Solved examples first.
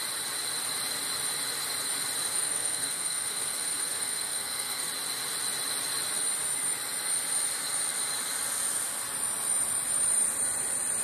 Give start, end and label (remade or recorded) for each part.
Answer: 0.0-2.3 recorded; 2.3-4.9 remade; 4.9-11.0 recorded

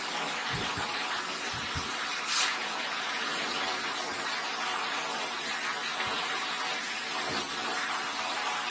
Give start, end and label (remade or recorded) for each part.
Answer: 0.0-2.5 recorded; 2.5-3.7 remade; 3.7-5.8 recorded; 5.8-7.5 remade; 7.5-8.7 recorded

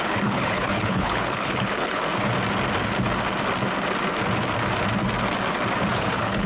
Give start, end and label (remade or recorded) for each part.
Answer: 0.0-2.0 remade; 2.0-5.9 recorded; 5.9-6.5 remade

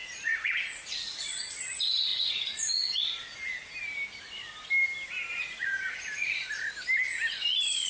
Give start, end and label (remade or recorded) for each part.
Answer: 0.0-1.6 remade; 1.6-2.1 recorded; 2.1-3.0 remade; 3.0-5.3 recorded; 5.3-6.2 remade; 6.2-7.9 recorded

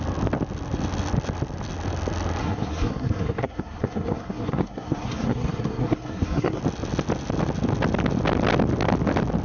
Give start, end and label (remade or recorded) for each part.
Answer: 0.0-2.4 recorded; 2.4-6.6 remade; 6.6-9.4 recorded

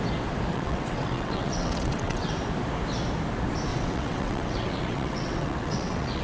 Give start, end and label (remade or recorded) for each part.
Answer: 0.0-0.5 recorded; 0.5-2.3 remade; 2.3-3.7 recorded; 3.7-6.2 remade

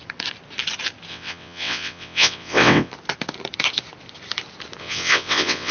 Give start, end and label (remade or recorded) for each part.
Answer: 0.0-1.1 recorded; 1.1-2.9 remade; 2.9-4.8 recorded; 4.8-5.7 remade

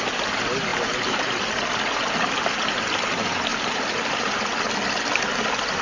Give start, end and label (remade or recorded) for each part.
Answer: 0.0-0.7 recorded; 0.7-1.2 remade; 1.2-3.5 recorded; 3.5-4.0 remade; 4.0-5.8 recorded